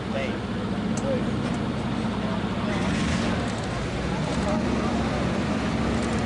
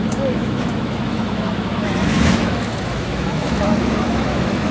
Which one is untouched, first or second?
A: first